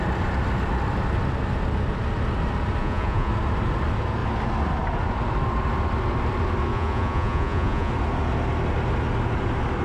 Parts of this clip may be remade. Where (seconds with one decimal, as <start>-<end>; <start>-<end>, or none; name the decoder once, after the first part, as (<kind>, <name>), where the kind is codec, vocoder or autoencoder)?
2.8-3.3 (vocoder, Vocos); 6.7-7.9